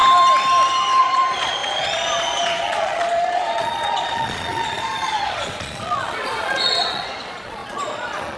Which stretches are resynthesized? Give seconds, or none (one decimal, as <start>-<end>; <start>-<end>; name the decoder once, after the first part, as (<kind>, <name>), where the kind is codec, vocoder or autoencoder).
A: 1.0-8.4 (vocoder, Vocos)